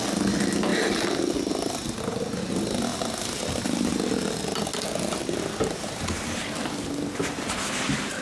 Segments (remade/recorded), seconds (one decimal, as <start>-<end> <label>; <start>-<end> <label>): 0.0-8.2 recorded

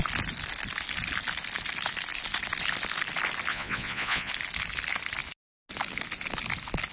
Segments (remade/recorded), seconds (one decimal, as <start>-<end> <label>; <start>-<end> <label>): 0.0-3.5 recorded; 3.5-4.3 remade; 4.3-6.9 recorded

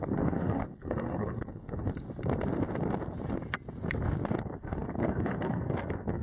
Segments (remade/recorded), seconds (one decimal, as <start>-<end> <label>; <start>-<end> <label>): 0.0-1.9 remade; 1.9-4.4 recorded; 4.4-6.2 remade

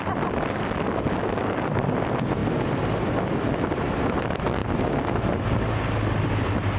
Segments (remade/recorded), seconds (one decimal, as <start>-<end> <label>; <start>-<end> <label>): 0.0-6.8 recorded

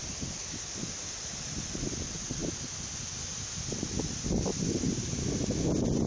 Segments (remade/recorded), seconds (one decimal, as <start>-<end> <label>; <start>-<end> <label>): 0.0-6.1 recorded

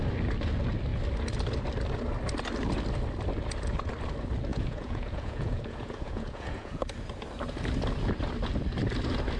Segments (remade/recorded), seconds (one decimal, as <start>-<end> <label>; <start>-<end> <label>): 0.0-4.5 recorded; 4.5-6.8 remade; 6.8-9.4 recorded

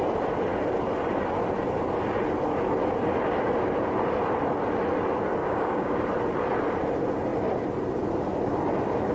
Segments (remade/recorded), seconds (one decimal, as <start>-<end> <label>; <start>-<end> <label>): 0.0-5.4 recorded; 5.4-6.0 remade; 6.0-9.1 recorded